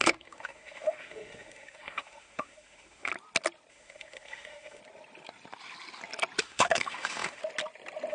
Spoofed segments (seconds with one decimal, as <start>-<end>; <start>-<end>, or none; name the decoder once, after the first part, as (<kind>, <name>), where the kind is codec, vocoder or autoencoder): 0.0-3.1 (autoencoder, DAC-VAE); 3.7-4.8; 6.4-7.4